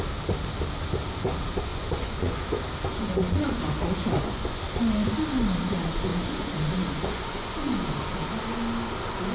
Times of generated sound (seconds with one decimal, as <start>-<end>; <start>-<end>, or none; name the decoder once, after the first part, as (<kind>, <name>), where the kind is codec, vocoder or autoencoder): 1.7-2.4 (vocoder, Vocos); 2.9-4.6; 6.1-8.1